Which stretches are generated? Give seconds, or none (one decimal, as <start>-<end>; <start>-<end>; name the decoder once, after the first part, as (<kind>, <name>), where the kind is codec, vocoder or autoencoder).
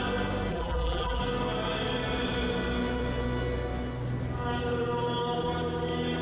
0.5-1.2 (vocoder, BigVGAN v2)